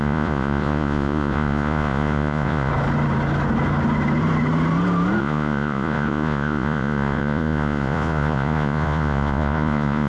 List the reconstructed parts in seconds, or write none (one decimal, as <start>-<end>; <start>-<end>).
0.0-2.7; 5.2-10.1